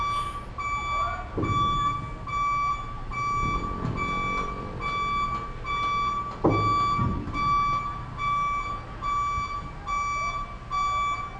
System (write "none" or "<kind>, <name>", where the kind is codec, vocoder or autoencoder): none